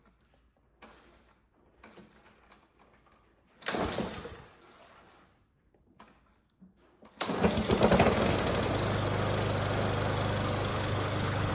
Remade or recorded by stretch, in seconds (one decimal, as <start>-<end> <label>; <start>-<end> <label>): 0.0-10.7 recorded; 10.7-11.5 remade